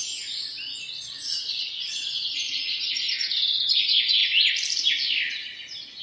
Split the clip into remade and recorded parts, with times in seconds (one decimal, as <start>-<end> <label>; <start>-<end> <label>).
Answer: 0.0-0.9 recorded; 0.9-4.2 remade; 4.2-5.3 recorded; 5.3-6.0 remade